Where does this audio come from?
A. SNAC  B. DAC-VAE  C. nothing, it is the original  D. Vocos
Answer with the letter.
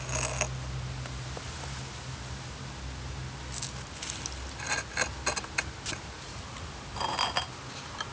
C